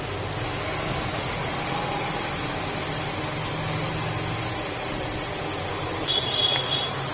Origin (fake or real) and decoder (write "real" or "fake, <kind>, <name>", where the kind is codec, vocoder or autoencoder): real